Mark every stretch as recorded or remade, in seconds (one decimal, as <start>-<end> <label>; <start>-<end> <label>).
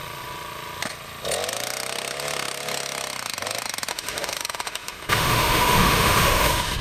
0.0-3.9 recorded; 3.9-6.8 remade